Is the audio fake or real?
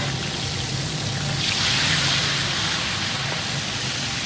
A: real